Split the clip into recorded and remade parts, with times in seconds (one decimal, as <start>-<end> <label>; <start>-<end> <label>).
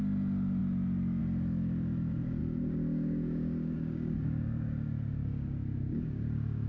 0.0-2.4 recorded; 2.4-6.7 remade